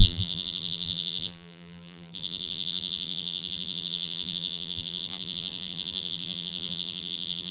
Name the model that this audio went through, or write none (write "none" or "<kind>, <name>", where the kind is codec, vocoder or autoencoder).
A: vocoder, BigVGAN v2